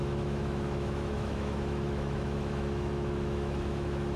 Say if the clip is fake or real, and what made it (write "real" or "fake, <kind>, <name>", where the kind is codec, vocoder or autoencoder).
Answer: fake, autoencoder, DAC-VAE